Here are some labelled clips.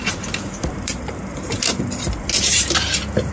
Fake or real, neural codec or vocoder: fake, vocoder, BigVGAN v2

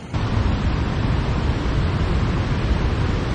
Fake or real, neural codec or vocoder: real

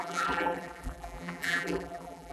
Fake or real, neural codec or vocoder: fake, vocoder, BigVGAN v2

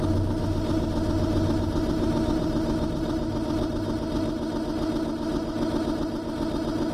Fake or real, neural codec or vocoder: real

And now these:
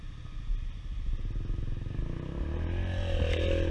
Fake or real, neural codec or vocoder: real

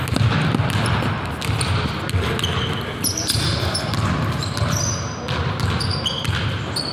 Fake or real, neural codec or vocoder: real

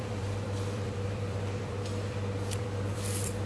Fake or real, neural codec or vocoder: fake, vocoder, BigVGAN v2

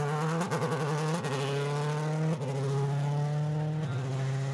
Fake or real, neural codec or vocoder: real